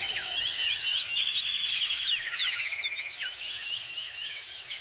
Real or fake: fake